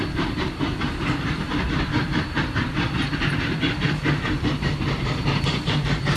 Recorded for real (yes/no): no